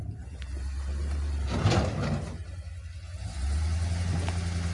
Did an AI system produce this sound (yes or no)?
no